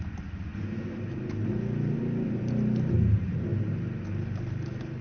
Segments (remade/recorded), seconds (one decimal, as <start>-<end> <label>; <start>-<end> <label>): 0.0-5.0 recorded